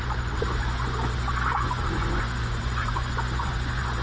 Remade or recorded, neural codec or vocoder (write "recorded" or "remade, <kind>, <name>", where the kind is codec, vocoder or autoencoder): remade, vocoder, Vocos